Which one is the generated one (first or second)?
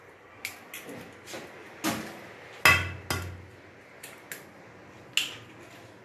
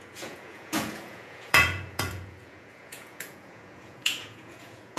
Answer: second